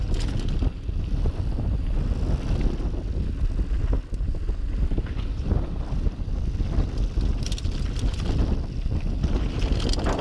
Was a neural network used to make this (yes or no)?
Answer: no